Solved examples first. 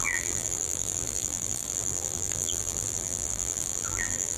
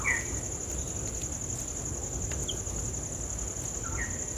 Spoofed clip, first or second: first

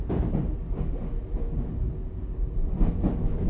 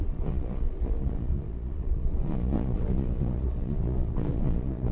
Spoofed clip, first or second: second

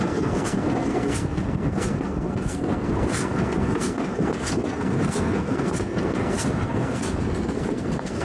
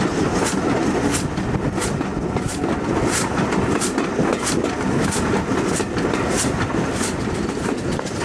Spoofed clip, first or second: first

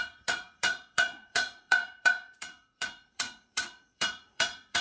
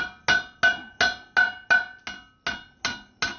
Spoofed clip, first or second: first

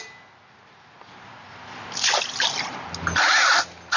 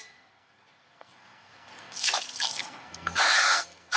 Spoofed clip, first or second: second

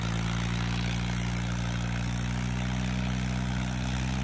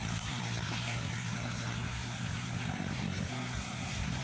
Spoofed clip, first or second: second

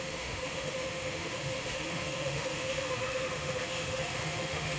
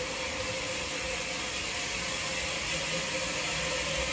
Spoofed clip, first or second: first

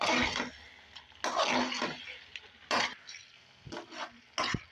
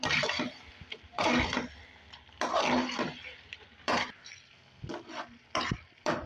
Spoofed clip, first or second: second